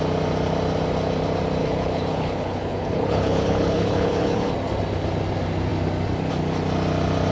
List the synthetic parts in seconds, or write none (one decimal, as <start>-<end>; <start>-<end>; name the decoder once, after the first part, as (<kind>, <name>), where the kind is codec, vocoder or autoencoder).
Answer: 1.6-4.5 (codec, HILCodec)

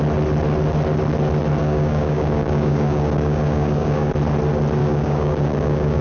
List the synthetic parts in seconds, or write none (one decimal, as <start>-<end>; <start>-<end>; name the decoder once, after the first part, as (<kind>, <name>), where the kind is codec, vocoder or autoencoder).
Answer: 1.6-4.1 (codec, DAC); 4.8-6.0